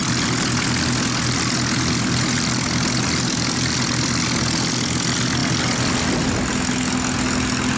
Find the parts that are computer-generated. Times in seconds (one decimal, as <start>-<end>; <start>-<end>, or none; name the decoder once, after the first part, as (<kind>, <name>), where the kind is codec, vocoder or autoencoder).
none